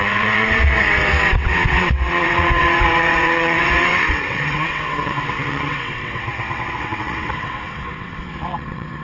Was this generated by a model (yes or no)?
yes